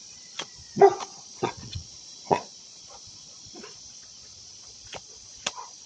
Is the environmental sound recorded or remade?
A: remade